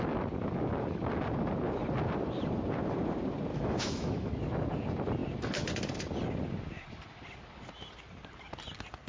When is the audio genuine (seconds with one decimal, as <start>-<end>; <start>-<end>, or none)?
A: 0.0-3.5; 4.3-9.1